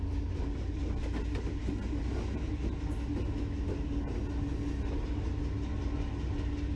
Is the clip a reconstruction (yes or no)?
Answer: no